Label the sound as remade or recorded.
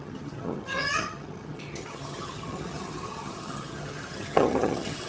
remade